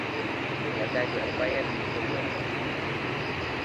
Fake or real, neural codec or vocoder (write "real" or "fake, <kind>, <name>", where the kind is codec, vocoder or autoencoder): real